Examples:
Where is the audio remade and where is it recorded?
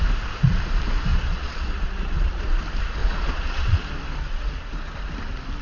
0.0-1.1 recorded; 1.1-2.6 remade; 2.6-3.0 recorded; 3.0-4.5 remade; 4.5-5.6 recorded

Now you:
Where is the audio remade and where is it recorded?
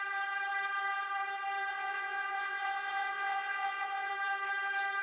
0.0-1.7 recorded; 1.7-4.1 remade; 4.1-5.0 recorded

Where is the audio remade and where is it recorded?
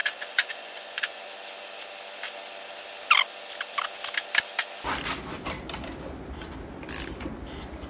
0.0-1.2 remade; 1.2-7.9 recorded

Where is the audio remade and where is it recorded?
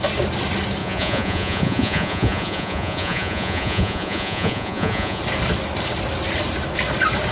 0.0-0.8 recorded; 0.8-5.2 remade; 5.2-7.3 recorded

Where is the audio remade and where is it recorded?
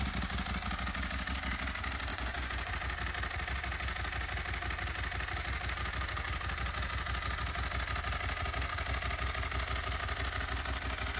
0.0-2.1 recorded; 2.1-2.7 remade; 2.7-11.2 recorded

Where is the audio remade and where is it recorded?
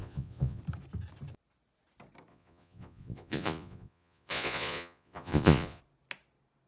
0.0-0.6 remade; 0.6-2.3 recorded; 2.3-5.8 remade; 5.8-6.7 recorded